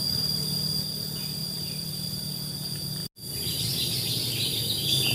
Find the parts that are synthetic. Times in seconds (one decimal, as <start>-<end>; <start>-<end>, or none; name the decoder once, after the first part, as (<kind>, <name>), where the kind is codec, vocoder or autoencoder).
1.4-2.4 (vocoder, BigVGAN v2)